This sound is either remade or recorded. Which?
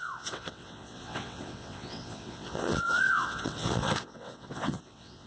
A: remade